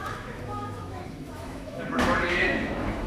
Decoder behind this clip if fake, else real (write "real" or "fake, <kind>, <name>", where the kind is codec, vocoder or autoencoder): fake, autoencoder, DAC-VAE